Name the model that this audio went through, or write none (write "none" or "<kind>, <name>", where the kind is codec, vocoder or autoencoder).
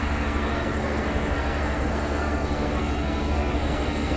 codec, SNAC